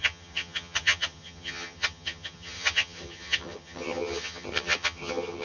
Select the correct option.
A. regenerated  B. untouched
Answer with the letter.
A